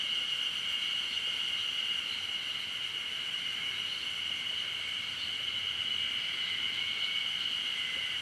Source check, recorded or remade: recorded